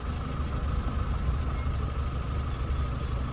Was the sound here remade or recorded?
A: recorded